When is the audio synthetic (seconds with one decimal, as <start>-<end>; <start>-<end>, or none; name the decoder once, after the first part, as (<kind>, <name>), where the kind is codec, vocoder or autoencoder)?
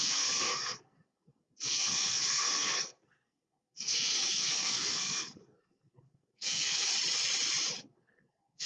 0.0-6.9 (codec, SNAC); 7.8-8.7